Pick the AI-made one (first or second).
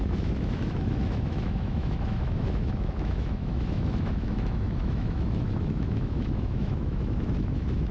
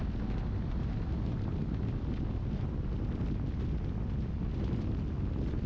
first